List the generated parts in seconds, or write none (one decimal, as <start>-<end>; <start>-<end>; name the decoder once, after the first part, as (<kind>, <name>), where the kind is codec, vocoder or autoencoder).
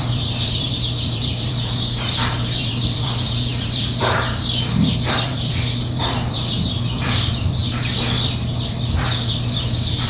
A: 0.0-7.6 (vocoder, BigVGAN v2); 9.3-10.1